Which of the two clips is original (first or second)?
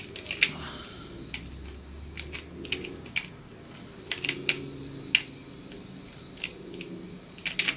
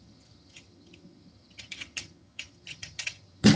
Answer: first